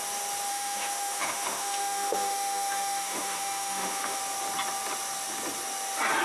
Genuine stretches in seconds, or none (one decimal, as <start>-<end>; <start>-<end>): 0.0-0.5; 4.2-6.2